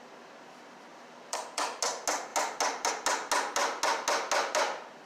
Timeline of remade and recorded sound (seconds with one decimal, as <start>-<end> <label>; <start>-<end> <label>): 0.0-0.9 recorded; 0.9-1.8 remade; 1.8-5.1 recorded